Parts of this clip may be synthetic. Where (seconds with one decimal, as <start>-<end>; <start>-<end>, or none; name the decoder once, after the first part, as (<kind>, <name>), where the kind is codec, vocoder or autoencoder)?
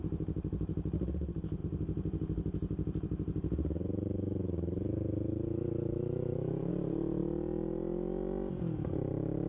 0.0-7.2 (vocoder, BigVGAN v2); 9.1-9.5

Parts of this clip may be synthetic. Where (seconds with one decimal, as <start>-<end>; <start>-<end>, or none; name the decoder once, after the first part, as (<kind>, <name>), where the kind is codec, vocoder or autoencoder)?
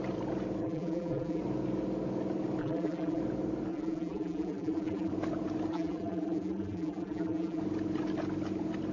0.6-1.4 (vocoder, BigVGAN v2); 2.6-3.2; 3.7-5.1; 5.7-7.6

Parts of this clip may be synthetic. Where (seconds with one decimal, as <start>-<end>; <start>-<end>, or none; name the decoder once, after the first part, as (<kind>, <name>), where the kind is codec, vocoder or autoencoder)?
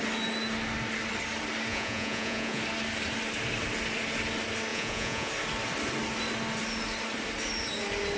1.7-2.6 (vocoder, Vocos); 4.7-5.3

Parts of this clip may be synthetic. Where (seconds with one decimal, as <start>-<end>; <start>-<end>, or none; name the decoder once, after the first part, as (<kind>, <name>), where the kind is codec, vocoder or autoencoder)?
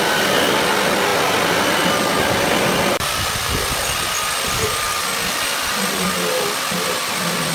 none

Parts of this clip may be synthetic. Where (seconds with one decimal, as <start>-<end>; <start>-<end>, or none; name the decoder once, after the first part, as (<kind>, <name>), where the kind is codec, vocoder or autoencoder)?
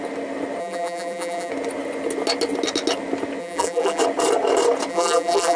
0.6-1.5 (vocoder, BigVGAN v2); 3.4-4.0; 4.9-5.6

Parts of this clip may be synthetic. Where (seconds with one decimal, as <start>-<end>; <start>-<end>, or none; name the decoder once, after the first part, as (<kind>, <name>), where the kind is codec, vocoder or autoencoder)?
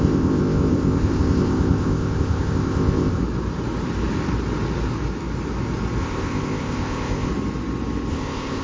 0.0-3.2 (codec, ZipCodec); 6.0-7.3; 8.1-8.6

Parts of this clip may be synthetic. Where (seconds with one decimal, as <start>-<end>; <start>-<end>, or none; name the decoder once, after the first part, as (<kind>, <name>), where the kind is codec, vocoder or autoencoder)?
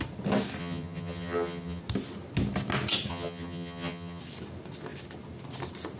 0.6-1.8 (vocoder, HiFi-GAN); 3.1-4.2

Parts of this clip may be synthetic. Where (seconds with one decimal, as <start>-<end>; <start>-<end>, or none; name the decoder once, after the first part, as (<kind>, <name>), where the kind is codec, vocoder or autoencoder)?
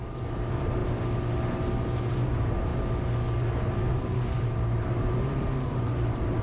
0.0-0.8 (vocoder, BigVGAN v2); 2.1-2.7; 3.7-6.4